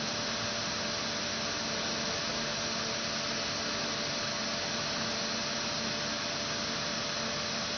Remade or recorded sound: recorded